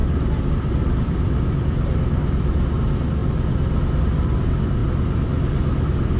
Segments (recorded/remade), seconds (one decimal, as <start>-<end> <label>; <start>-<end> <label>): 0.0-3.2 remade; 3.2-4.0 recorded; 4.0-4.8 remade; 4.8-6.2 recorded